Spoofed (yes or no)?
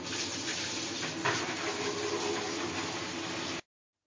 no